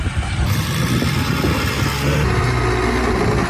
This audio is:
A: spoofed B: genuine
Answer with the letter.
B